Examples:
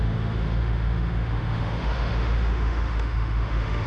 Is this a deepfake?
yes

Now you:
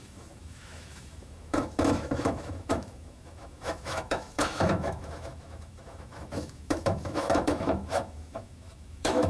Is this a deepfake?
yes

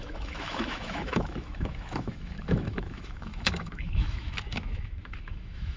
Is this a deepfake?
yes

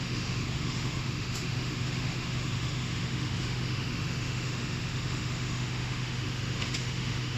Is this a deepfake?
yes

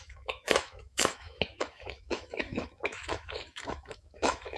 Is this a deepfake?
yes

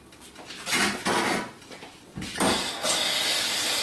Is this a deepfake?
no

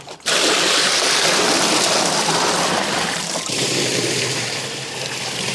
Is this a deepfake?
no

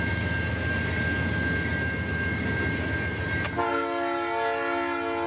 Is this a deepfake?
no